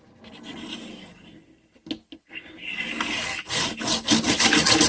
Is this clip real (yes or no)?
yes